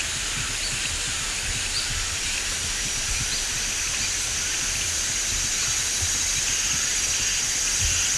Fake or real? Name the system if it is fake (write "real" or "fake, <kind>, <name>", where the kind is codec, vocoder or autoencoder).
real